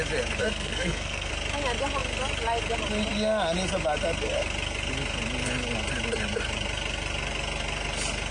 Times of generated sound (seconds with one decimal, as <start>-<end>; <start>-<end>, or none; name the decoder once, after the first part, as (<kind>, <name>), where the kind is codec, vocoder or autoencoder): 0.4-1.3 (codec, SNAC)